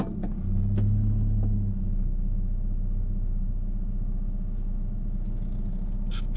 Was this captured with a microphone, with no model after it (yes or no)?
yes